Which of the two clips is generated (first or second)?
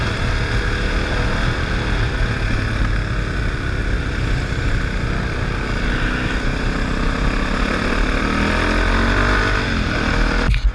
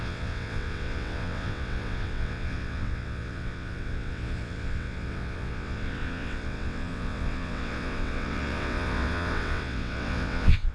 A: second